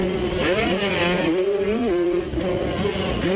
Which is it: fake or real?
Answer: fake